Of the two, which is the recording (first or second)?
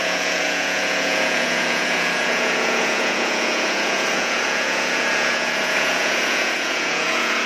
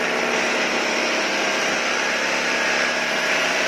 second